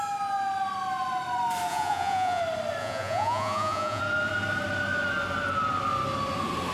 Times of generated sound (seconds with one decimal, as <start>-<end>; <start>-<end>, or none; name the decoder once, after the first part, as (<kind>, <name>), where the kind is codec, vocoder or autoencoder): 1.7-2.4 (vocoder, Vocos); 2.8-4.0